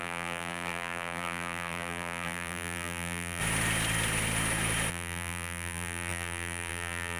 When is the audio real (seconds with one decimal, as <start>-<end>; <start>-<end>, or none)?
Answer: 3.4-4.9